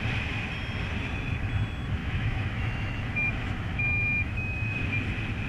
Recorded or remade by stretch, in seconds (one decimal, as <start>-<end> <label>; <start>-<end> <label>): 0.0-2.0 recorded; 2.0-4.9 remade; 4.9-5.5 recorded